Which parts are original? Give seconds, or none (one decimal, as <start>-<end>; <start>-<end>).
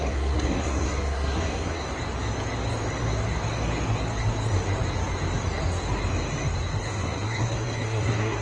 1.8-6.8